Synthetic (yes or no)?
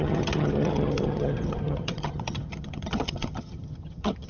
yes